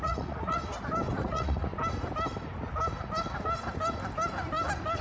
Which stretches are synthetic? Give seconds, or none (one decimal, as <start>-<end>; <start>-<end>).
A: 0.0-0.6; 1.1-1.7